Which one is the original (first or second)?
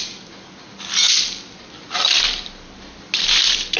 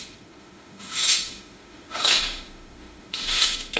first